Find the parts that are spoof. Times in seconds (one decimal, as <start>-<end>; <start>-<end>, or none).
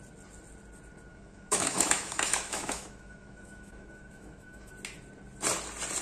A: 1.1-4.7